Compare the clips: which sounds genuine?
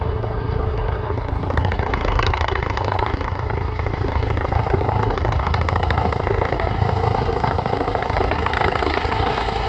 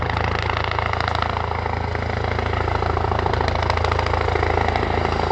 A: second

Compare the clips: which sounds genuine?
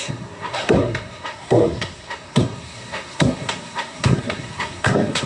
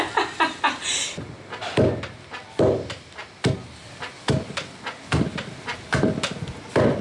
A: second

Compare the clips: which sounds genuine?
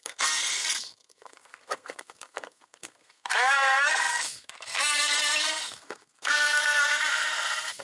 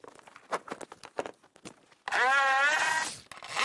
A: second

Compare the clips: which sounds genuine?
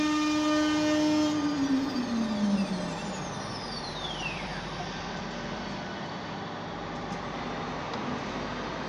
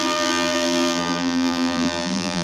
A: first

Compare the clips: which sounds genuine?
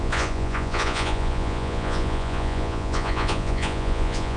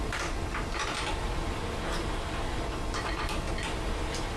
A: second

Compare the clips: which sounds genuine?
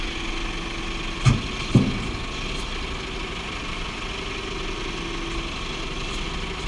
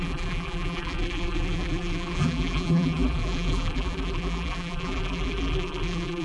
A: first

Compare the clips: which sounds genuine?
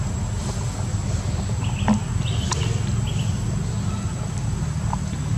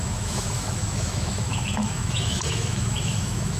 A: first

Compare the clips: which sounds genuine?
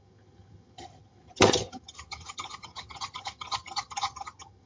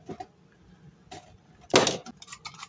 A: second